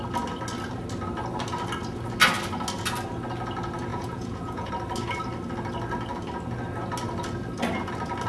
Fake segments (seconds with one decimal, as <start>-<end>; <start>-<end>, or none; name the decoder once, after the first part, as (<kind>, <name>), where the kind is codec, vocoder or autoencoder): 3.9-4.7 (vocoder, Vocos)